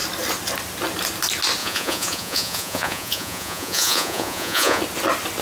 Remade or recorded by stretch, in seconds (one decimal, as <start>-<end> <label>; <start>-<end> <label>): 0.0-1.6 recorded; 1.6-4.8 remade; 4.8-5.4 recorded